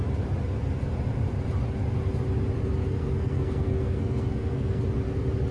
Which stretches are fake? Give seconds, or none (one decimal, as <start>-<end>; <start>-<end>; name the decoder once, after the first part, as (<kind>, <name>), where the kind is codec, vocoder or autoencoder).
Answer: 2.8-4.8 (codec, SNAC)